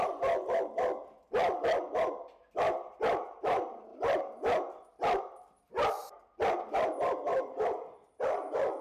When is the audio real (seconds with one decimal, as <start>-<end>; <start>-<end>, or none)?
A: 0.0-8.8